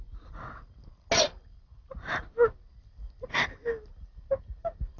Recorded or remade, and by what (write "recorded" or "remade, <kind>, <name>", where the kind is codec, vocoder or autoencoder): recorded